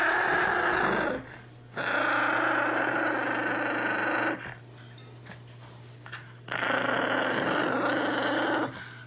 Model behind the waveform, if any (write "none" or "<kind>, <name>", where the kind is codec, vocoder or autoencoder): none